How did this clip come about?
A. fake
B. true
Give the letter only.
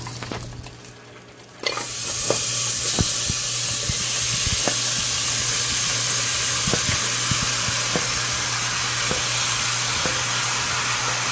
B